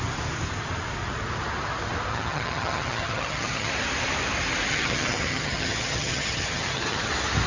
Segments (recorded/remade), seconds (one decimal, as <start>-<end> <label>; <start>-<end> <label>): 0.0-2.1 recorded; 2.1-3.7 remade; 3.7-4.7 recorded; 4.7-7.1 remade; 7.1-7.5 recorded